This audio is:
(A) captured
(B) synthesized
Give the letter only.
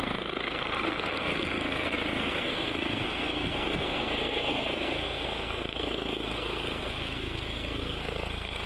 B